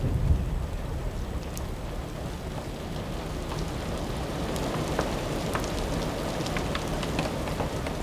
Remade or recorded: recorded